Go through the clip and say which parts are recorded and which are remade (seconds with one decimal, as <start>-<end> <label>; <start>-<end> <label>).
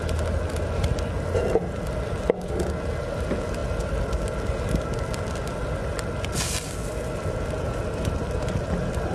0.0-9.1 recorded